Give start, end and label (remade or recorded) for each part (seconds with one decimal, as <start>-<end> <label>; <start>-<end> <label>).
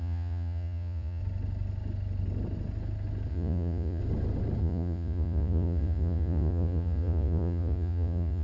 0.0-1.2 remade; 1.2-3.3 recorded; 3.3-4.0 remade; 4.0-4.6 recorded; 4.6-8.4 remade